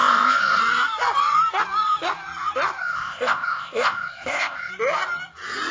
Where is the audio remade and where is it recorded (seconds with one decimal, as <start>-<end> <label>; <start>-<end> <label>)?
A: 0.0-0.6 remade; 0.6-2.8 recorded; 2.8-4.7 remade; 4.7-5.7 recorded